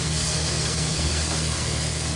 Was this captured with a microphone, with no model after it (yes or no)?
no